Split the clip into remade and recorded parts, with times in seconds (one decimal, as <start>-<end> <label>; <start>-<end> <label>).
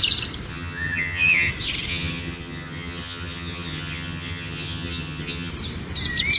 0.0-0.5 recorded; 0.5-1.5 remade; 1.5-1.9 recorded; 1.9-5.5 remade; 5.5-6.4 recorded